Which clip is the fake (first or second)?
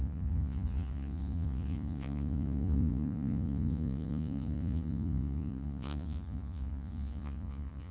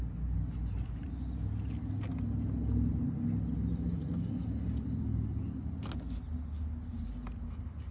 first